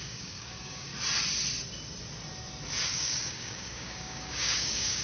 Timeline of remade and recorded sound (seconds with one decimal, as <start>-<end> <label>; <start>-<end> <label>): 0.0-0.9 remade; 0.9-2.8 recorded; 2.8-5.0 remade